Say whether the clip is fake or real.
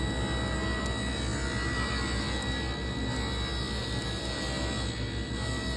real